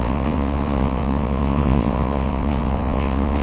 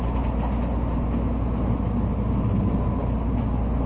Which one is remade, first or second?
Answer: first